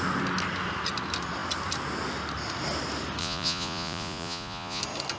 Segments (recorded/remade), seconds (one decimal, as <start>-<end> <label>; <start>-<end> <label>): 0.0-3.2 recorded; 3.2-4.8 remade; 4.8-5.2 recorded